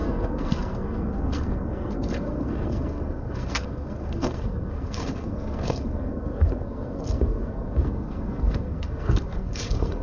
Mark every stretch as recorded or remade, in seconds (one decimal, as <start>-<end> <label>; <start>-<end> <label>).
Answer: 0.0-10.0 remade